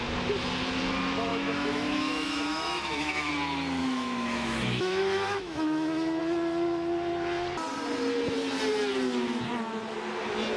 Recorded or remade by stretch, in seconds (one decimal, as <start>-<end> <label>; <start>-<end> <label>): 0.0-1.3 recorded; 1.3-3.3 remade; 3.3-3.8 recorded; 3.8-6.2 remade; 6.2-10.6 recorded

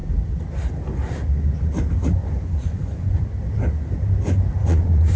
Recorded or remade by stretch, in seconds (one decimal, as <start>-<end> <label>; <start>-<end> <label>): 0.0-2.2 recorded; 2.2-3.2 remade; 3.2-4.6 recorded; 4.6-5.2 remade

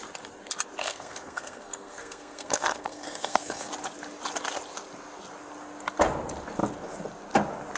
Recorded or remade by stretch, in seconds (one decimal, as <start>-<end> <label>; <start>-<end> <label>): 0.0-0.8 recorded; 0.8-3.7 remade; 3.7-7.8 recorded

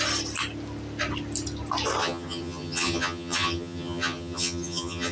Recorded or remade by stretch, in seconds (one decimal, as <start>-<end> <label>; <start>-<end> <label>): 0.0-2.0 recorded; 2.0-5.1 remade

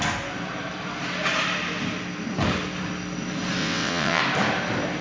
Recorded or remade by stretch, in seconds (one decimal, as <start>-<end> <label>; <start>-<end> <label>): 0.0-3.6 recorded; 3.6-4.2 remade; 4.2-5.0 recorded

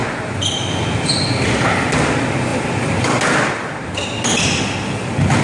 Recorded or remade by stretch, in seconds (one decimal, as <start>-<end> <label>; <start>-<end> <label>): 0.0-5.4 recorded

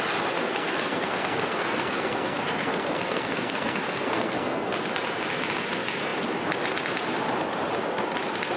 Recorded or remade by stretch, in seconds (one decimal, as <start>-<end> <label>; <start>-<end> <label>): 0.0-0.4 recorded; 0.4-4.7 remade; 4.7-8.6 recorded